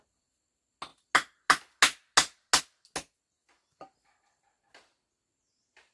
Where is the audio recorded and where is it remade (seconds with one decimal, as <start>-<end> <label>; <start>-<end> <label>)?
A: 0.0-5.9 recorded